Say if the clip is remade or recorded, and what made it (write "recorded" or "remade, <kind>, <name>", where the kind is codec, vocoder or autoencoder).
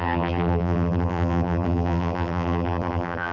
remade, vocoder, BigVGAN v2